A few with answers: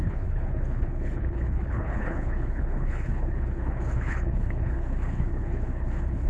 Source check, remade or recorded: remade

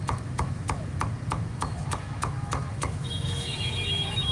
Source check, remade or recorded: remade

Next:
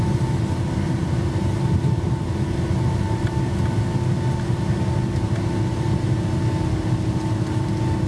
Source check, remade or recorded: recorded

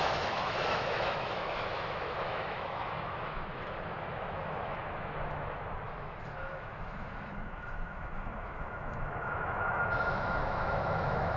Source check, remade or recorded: remade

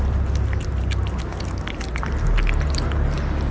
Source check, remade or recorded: recorded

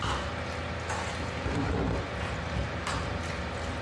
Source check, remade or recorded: recorded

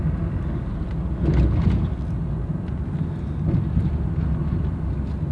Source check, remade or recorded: recorded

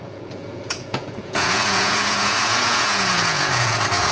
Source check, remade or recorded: remade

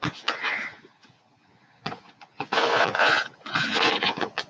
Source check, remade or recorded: remade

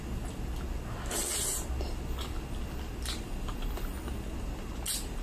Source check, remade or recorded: recorded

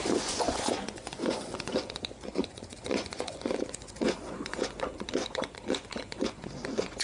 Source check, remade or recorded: remade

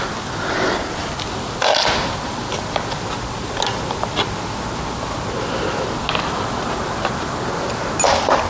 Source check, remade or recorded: recorded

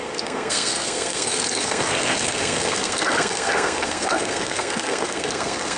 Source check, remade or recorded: remade